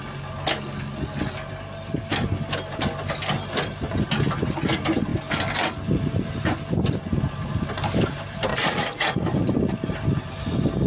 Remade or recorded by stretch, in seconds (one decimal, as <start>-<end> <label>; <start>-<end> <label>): 0.0-8.5 recorded; 8.5-9.1 remade; 9.1-10.9 recorded

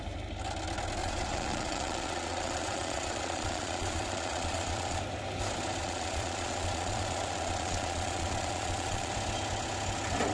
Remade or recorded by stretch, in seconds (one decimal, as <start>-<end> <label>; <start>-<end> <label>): 0.0-1.0 recorded; 1.0-5.0 remade; 5.0-5.8 recorded; 5.8-9.1 remade; 9.1-10.3 recorded

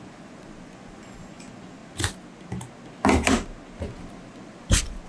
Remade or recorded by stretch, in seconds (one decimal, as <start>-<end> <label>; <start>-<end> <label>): 0.0-1.8 remade; 1.8-4.6 recorded; 4.6-5.1 remade

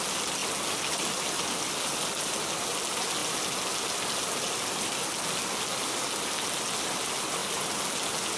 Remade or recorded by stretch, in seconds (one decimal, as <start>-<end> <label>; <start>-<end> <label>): 0.0-8.4 recorded

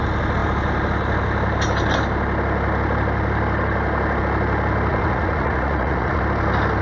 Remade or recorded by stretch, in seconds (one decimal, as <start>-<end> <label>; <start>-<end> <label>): 0.0-4.9 recorded; 4.9-6.2 remade; 6.2-6.8 recorded

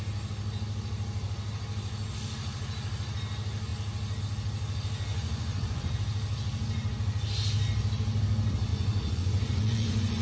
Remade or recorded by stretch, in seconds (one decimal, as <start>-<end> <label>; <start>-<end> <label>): 0.0-5.1 recorded; 5.1-5.9 remade; 5.9-8.7 recorded; 8.7-10.2 remade

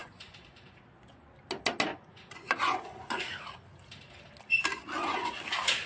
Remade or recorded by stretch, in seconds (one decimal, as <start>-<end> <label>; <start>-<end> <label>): 0.0-1.3 remade; 1.3-1.9 recorded; 1.9-3.4 remade; 3.4-4.7 recorded; 4.7-5.4 remade; 5.4-5.9 recorded

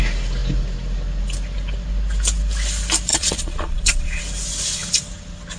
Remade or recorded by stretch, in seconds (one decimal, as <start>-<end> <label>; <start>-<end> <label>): 0.0-3.1 recorded; 3.1-4.2 remade; 4.2-5.6 recorded